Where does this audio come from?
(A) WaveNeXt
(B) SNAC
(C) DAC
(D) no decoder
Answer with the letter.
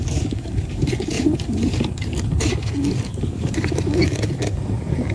C